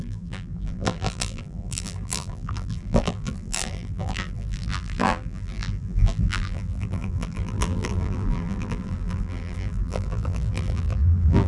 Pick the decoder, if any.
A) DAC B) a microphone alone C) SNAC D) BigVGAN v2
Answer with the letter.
D